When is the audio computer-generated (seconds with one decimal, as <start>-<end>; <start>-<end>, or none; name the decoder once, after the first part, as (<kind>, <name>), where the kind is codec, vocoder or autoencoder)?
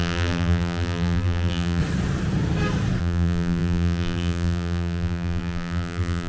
0.0-1.8 (vocoder, BigVGAN v2); 3.0-6.3